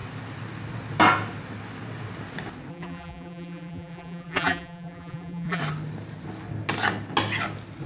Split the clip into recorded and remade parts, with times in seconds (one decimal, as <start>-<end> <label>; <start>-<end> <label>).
0.0-2.7 recorded; 2.7-5.6 remade; 5.6-7.9 recorded